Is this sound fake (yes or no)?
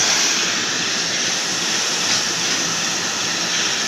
no